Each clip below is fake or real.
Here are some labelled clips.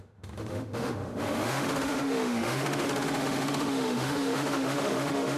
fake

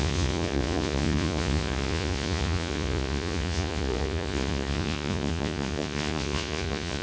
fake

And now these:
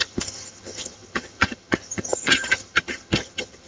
fake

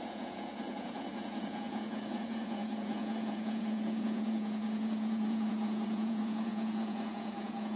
fake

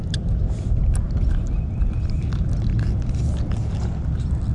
real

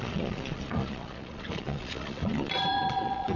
fake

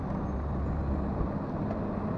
real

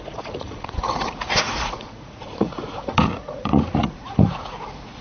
fake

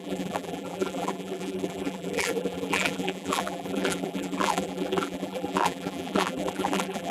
fake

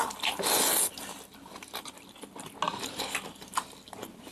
real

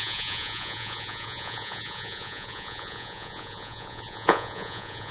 fake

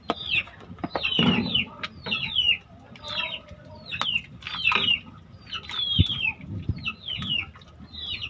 real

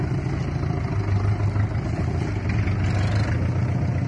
real